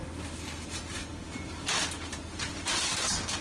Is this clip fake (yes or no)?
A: no